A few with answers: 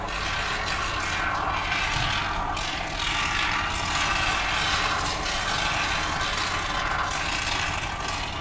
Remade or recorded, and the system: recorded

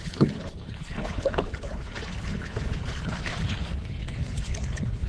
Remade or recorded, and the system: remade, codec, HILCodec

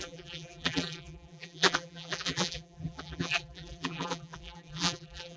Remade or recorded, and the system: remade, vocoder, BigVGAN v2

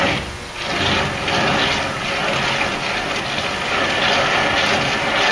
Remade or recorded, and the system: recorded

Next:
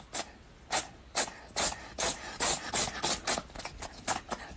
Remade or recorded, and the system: recorded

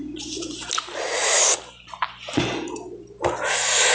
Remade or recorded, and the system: recorded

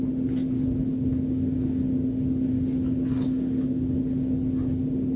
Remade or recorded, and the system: recorded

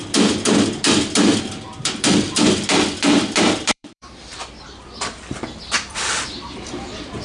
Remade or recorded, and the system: remade, vocoder, BigVGAN v2